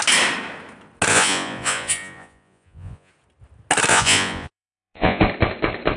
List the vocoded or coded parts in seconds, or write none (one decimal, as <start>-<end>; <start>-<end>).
1.1-3.1; 3.9-5.2